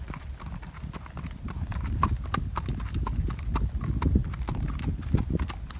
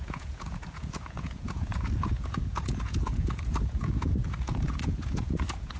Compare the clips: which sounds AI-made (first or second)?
second